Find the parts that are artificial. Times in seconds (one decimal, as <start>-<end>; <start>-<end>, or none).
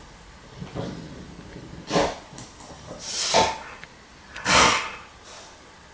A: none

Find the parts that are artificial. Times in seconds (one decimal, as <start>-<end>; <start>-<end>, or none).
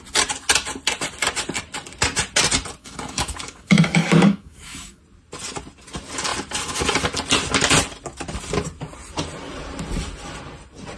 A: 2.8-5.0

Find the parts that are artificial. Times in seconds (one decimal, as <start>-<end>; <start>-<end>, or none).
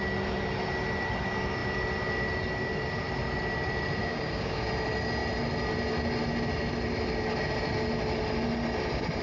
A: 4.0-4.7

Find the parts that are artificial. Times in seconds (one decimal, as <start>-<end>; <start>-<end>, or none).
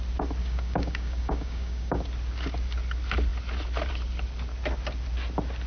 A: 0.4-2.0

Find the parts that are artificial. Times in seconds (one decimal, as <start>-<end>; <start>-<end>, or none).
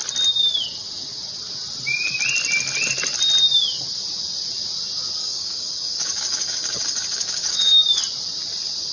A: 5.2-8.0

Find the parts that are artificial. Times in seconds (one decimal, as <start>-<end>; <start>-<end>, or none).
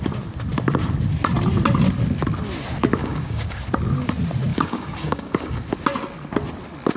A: 3.0-3.6; 4.5-5.6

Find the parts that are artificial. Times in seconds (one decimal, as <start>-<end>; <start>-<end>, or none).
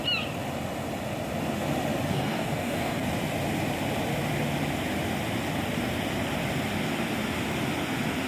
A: 2.1-3.0